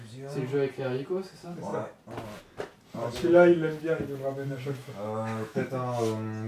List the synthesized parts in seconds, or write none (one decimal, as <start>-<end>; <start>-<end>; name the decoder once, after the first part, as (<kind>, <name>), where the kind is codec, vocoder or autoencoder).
4.8-5.7 (autoencoder, DAC-VAE)